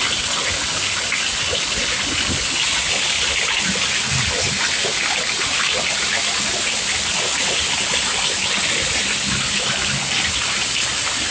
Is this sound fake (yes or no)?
no